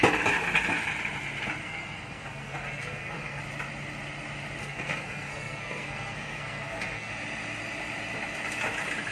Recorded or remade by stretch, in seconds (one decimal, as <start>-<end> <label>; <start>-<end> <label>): 0.0-1.6 recorded; 1.6-3.4 remade; 3.4-4.6 recorded; 4.6-7.1 remade; 7.1-9.1 recorded

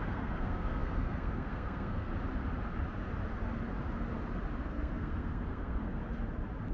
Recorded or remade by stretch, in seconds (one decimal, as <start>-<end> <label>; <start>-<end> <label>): 0.0-2.1 remade; 2.1-4.6 recorded; 4.6-6.0 remade; 6.0-6.7 recorded

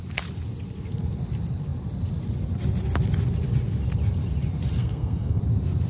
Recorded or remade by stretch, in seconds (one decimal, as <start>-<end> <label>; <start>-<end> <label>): 0.0-4.8 recorded; 4.8-5.4 remade; 5.4-5.9 recorded

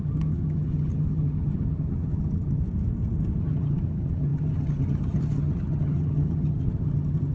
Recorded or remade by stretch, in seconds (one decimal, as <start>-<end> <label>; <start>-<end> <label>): 0.0-2.6 remade; 2.6-3.4 recorded; 3.4-7.3 remade

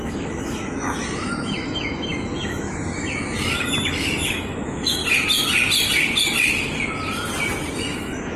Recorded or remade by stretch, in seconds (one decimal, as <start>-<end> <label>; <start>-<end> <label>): 0.0-5.0 remade; 5.0-7.7 recorded; 7.7-8.4 remade